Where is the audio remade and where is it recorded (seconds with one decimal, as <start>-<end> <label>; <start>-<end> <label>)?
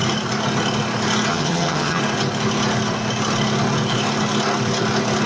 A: 0.0-1.3 recorded; 1.3-2.0 remade; 2.0-5.3 recorded